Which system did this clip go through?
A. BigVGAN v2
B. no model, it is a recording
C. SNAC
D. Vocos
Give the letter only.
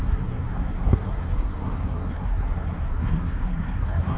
C